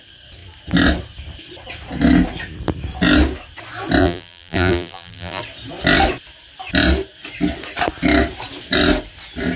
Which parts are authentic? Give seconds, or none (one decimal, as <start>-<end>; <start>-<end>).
0.0-4.0; 5.4-9.6

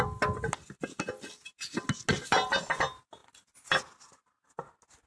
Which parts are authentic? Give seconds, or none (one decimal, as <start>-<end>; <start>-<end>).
0.0-5.1

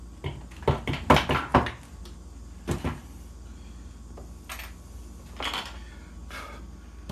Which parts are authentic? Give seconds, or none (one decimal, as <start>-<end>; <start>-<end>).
0.0-7.1

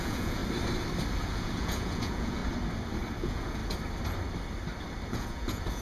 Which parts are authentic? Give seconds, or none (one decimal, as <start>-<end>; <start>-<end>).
0.4-1.2; 2.4-3.2; 3.6-5.1

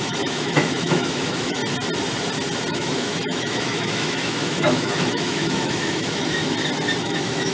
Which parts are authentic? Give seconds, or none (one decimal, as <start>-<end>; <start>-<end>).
1.6-2.7; 6.4-7.0

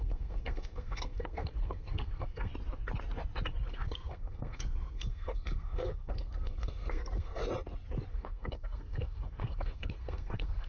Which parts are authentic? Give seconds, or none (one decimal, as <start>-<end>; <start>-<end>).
2.5-3.7; 7.4-8.1